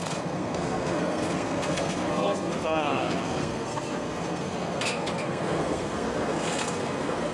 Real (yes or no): no